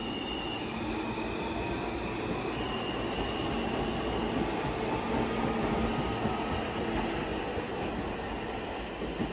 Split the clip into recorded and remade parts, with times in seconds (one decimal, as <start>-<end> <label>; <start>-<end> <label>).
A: 0.0-9.3 recorded